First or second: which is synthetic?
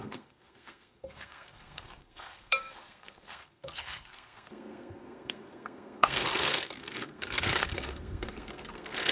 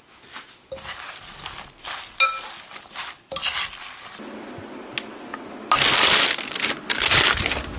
first